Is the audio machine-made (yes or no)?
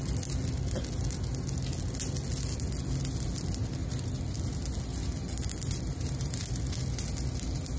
no